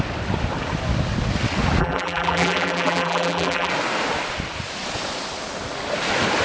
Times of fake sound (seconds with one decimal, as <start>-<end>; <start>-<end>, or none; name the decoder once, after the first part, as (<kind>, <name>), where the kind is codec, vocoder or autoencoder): 1.8-3.7 (vocoder, BigVGAN v2)